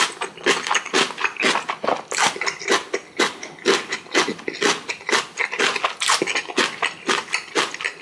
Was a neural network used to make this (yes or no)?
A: no